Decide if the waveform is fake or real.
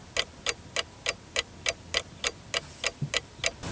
real